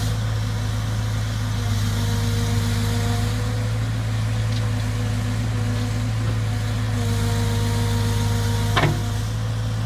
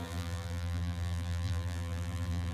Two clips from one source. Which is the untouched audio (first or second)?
first